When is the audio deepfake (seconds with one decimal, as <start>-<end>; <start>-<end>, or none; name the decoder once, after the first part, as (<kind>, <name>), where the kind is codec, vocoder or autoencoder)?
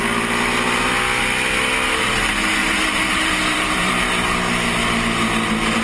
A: 2.6-3.9 (vocoder, BigVGAN v2)